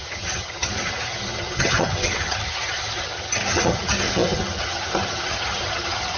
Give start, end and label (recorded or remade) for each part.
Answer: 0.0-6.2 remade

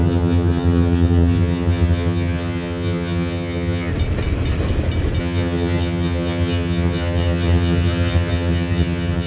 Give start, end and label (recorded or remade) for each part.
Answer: 0.0-3.9 remade; 3.9-5.2 recorded; 5.2-9.3 remade